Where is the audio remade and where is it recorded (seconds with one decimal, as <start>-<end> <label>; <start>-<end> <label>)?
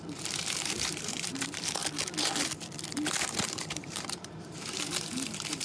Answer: 0.0-1.8 remade; 1.8-3.2 recorded; 3.2-5.6 remade